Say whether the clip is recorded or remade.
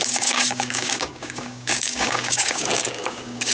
remade